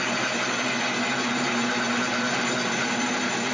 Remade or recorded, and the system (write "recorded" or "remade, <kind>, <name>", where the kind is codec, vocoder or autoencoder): recorded